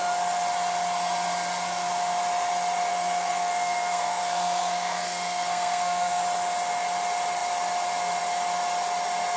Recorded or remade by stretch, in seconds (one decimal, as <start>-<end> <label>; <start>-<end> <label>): 0.0-2.9 recorded; 2.9-6.2 remade; 6.2-9.4 recorded